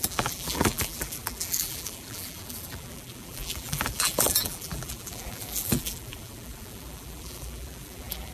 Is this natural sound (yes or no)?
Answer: no